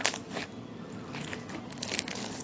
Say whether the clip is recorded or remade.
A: recorded